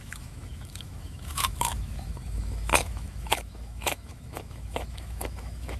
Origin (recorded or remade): remade